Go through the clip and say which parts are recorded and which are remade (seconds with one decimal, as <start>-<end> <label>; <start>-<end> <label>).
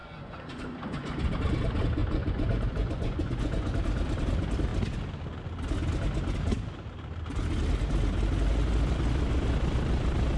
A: 0.0-1.3 remade; 1.3-2.0 recorded; 2.0-3.7 remade; 3.7-10.4 recorded